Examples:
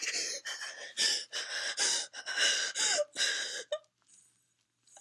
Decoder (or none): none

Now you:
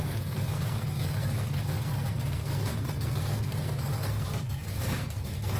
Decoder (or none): codec, SNAC